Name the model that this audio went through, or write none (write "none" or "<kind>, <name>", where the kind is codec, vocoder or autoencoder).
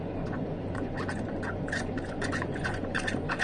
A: vocoder, Vocos